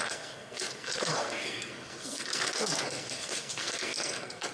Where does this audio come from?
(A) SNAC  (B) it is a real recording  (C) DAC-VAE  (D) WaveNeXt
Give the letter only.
A